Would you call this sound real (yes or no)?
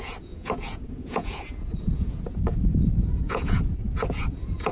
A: no